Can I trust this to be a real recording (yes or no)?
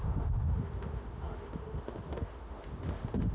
no